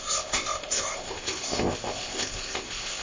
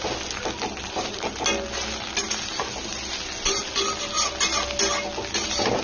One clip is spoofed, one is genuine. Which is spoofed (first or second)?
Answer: first